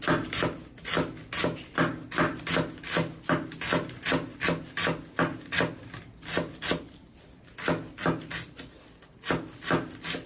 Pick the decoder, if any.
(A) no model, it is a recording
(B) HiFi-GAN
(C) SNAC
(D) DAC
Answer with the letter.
A